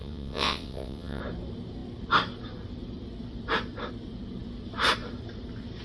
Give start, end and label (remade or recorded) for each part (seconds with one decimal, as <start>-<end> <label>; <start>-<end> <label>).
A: 0.0-1.2 remade; 1.2-5.8 recorded